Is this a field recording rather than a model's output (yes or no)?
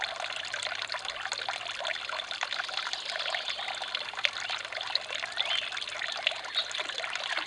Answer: yes